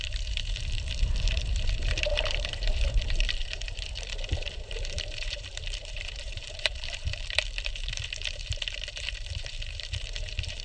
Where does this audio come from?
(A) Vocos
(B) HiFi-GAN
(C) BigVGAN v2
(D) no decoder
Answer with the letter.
C